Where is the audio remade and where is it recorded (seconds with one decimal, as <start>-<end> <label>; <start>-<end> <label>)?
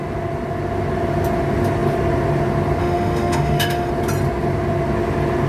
0.0-2.8 recorded; 2.8-3.9 remade; 3.9-5.5 recorded